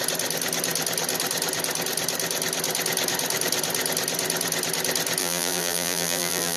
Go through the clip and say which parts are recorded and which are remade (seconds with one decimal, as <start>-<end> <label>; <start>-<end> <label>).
0.0-5.2 recorded; 5.2-6.6 remade